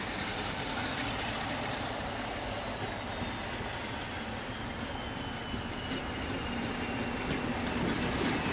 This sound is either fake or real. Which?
real